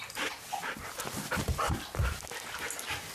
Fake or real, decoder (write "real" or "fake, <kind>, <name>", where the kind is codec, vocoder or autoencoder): real